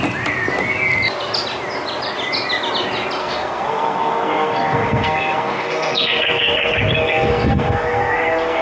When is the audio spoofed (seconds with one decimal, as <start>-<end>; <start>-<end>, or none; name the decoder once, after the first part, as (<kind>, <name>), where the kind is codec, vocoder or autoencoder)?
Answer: 3.2-8.6 (codec, SNAC)